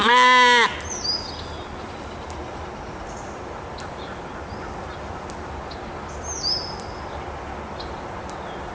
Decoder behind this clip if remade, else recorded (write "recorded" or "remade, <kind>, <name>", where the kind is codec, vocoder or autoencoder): recorded